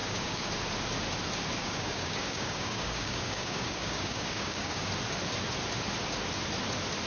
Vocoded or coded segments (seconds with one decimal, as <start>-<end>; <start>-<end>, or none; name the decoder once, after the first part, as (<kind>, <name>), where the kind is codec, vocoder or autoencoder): 0.0-0.5 (codec, DAC); 1.6-4.9